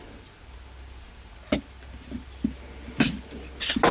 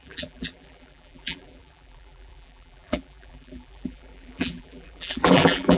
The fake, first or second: second